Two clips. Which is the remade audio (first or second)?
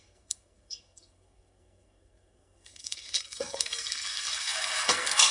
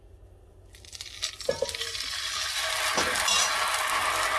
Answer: first